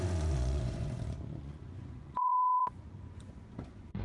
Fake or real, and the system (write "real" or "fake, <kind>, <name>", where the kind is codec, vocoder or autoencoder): fake, vocoder, Vocos